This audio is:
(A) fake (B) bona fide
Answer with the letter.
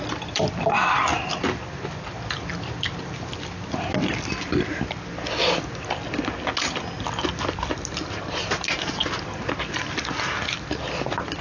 B